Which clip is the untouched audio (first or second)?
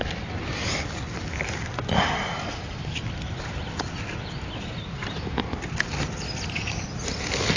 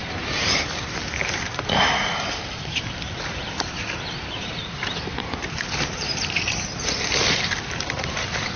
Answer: first